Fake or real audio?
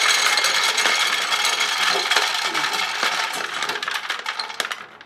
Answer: real